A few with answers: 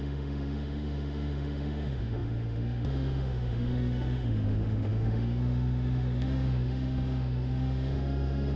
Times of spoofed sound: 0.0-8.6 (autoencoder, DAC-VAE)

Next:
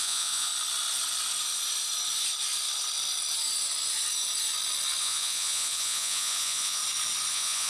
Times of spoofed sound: 0.0-0.5 (vocoder, Vocos); 5.0-6.8; 7.3-7.7